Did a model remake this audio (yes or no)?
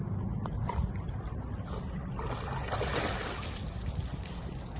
no